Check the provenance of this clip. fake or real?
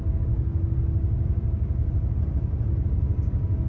real